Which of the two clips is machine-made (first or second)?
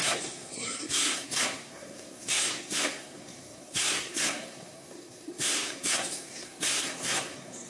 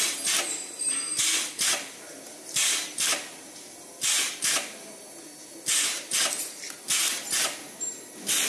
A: first